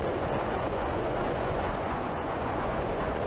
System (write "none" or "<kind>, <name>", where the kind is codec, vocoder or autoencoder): vocoder, Vocos